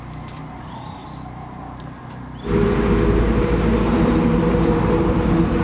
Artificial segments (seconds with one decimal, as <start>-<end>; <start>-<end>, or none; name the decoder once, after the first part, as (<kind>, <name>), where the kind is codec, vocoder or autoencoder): none